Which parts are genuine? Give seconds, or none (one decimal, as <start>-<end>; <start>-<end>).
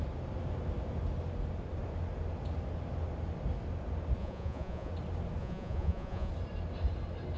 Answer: 0.0-4.2; 4.9-5.4; 6.3-7.4